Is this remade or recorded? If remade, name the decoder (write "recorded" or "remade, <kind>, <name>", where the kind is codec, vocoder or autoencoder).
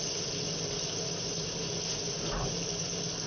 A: recorded